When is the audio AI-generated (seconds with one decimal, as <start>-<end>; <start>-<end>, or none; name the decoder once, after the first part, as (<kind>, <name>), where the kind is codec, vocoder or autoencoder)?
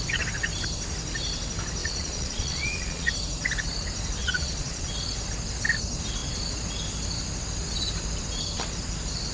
1.8-3.1 (vocoder, Vocos); 4.2-4.9